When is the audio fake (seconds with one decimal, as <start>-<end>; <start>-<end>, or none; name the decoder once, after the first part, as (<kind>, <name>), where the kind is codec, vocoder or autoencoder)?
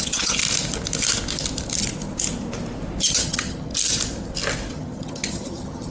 0.0-0.4 (vocoder, HiFi-GAN); 3.1-3.7; 4.7-5.9